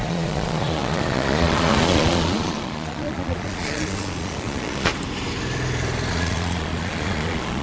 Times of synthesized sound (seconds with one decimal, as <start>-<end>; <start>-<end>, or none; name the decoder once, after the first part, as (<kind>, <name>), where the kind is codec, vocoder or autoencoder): 0.0-4.9 (vocoder, Vocos); 6.1-7.6